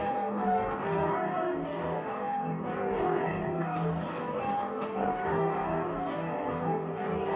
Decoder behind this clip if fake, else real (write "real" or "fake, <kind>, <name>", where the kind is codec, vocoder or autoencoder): fake, codec, DAC